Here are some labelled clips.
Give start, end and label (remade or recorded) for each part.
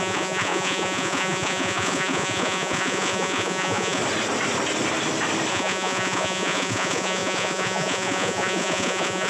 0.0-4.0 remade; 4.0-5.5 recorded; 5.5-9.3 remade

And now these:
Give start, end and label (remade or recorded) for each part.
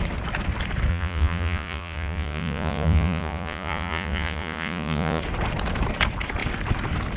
0.0-0.9 recorded; 0.9-5.2 remade; 5.2-7.2 recorded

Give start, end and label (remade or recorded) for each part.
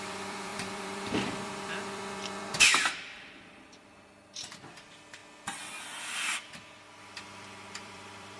0.0-5.2 remade; 5.2-6.2 recorded; 6.2-8.4 remade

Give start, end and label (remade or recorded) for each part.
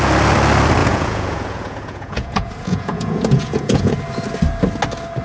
0.0-0.8 recorded; 0.8-3.9 remade; 3.9-5.2 recorded